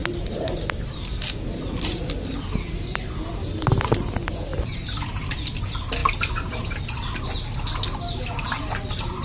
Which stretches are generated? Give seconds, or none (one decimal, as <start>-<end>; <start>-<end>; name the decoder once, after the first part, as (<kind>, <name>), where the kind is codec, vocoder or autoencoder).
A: 0.0-1.2 (vocoder, BigVGAN v2); 4.5-5.6